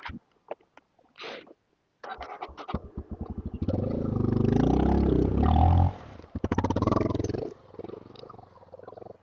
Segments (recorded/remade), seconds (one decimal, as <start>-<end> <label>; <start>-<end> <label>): 0.0-5.3 recorded; 5.3-7.2 remade; 7.2-9.2 recorded